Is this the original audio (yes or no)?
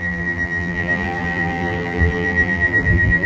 no